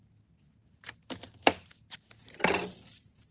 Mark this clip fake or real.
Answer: real